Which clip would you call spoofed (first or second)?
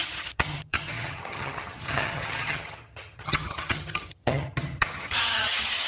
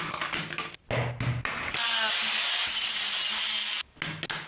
first